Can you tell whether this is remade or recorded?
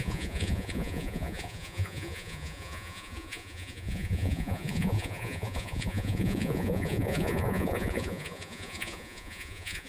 remade